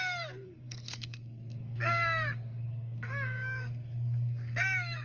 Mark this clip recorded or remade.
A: remade